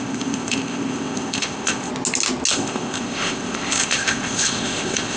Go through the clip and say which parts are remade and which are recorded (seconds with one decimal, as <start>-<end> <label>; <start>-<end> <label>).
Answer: 0.0-1.9 remade; 1.9-2.5 recorded; 2.5-5.2 remade

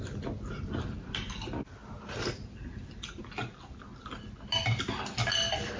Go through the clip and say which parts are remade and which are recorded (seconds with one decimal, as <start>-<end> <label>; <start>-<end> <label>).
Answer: 0.0-5.8 recorded

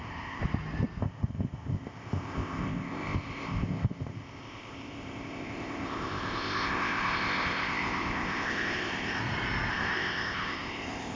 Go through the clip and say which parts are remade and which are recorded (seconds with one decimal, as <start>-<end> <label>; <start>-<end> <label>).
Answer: 0.0-0.4 remade; 0.4-1.0 recorded; 1.0-9.2 remade; 9.2-9.7 recorded; 9.7-11.2 remade

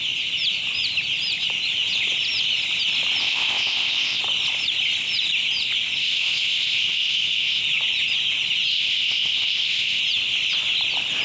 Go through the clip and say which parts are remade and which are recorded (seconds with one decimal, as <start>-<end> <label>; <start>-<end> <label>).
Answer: 0.0-3.2 recorded; 3.2-4.2 remade; 4.2-6.0 recorded; 6.0-7.6 remade; 7.6-8.7 recorded; 8.7-10.0 remade; 10.0-11.2 recorded

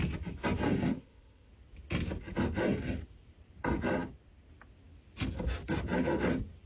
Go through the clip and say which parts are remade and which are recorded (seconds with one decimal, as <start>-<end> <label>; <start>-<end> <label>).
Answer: 0.0-0.9 recorded; 0.9-1.5 remade; 1.5-6.7 recorded